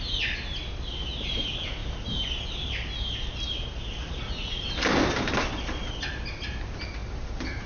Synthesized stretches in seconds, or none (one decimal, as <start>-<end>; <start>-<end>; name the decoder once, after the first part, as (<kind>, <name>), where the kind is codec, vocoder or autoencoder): none